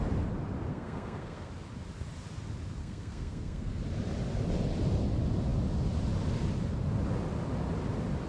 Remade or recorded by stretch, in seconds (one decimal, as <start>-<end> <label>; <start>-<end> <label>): 0.0-0.7 recorded; 0.7-1.5 remade; 1.5-2.8 recorded; 2.8-3.8 remade; 3.8-8.3 recorded